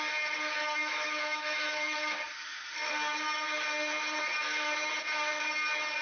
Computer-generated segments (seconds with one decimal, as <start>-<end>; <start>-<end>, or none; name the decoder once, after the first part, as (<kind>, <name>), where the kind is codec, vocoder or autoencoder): 0.6-2.2 (autoencoder, DAC-VAE)